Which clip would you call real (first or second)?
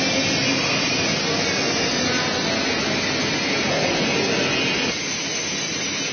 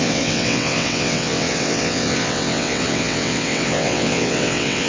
first